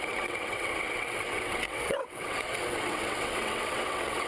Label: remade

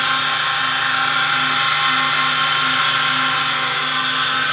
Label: recorded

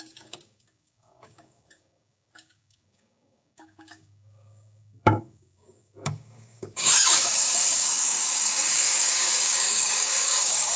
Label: remade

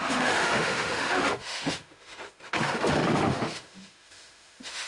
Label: remade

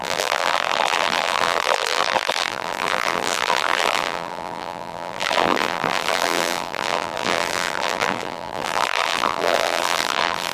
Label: remade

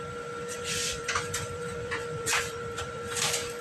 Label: remade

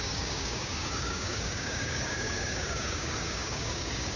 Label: remade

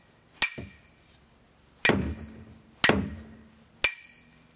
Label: recorded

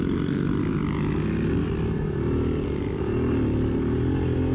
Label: recorded